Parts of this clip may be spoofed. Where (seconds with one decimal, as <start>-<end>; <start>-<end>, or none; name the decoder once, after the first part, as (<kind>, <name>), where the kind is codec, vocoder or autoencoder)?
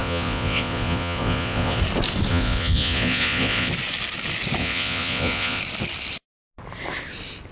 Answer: 0.0-1.8 (vocoder, Vocos); 2.3-3.7; 4.6-5.6